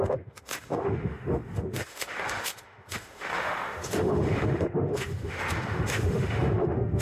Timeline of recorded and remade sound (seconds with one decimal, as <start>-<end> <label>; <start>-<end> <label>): 0.0-7.0 remade